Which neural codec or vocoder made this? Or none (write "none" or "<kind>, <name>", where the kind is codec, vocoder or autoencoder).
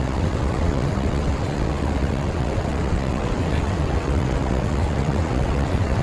vocoder, WaveNeXt